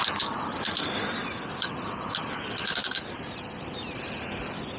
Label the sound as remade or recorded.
recorded